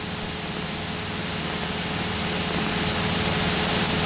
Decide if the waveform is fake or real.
real